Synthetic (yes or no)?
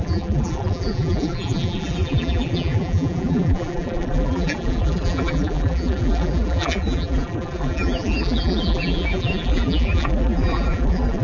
yes